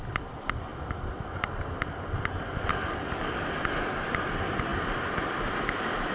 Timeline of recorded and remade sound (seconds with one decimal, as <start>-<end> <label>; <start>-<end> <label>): 0.0-2.7 recorded; 2.7-3.3 remade; 3.3-6.1 recorded